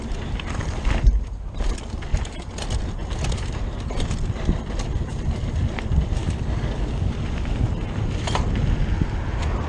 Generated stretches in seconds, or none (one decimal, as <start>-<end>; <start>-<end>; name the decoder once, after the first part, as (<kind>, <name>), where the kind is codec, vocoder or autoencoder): 6.2-7.2 (codec, DAC)